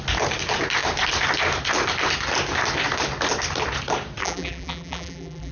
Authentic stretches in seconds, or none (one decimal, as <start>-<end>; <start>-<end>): 0.0-4.2